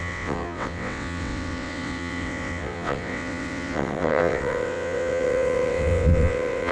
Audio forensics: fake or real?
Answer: fake